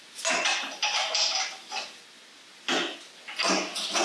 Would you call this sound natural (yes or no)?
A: yes